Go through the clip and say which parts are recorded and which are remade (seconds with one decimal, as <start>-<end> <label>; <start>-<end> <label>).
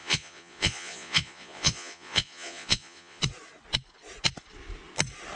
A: 0.0-3.2 remade; 3.2-5.4 recorded